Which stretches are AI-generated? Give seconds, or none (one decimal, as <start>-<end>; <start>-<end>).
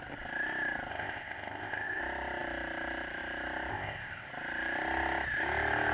0.9-2.0; 3.7-4.3